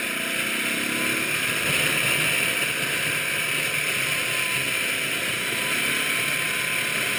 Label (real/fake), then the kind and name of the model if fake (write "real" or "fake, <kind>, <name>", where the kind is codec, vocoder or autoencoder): real